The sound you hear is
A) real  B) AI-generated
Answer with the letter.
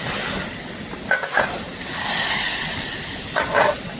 A